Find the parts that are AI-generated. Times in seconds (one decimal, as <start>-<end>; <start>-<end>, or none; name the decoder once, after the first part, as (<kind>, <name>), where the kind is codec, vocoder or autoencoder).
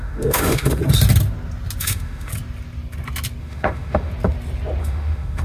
0.0-0.8 (autoencoder, DAC-VAE); 1.8-2.3; 3.4-4.1; 4.8-5.4